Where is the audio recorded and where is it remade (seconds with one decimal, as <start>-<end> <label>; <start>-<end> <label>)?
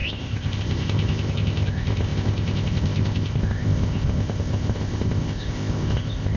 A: 0.0-6.4 remade